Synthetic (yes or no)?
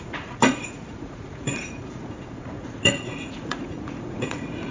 yes